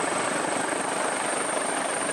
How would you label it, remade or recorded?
recorded